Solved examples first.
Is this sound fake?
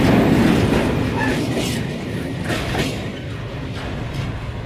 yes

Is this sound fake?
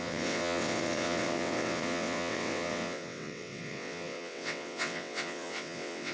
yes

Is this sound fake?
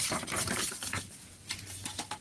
yes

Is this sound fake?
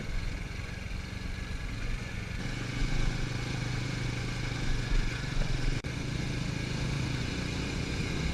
yes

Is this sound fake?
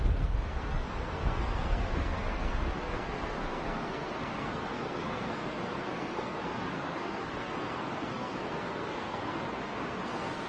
yes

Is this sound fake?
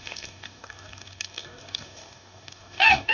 yes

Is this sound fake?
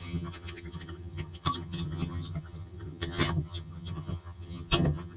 yes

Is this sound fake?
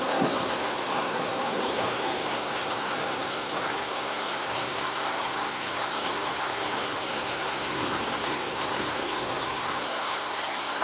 yes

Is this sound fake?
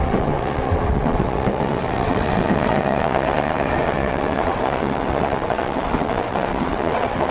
yes